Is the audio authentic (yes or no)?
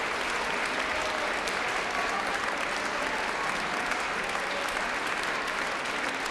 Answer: yes